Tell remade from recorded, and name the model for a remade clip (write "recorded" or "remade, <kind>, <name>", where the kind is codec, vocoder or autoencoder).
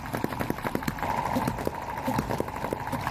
remade, vocoder, BigVGAN v2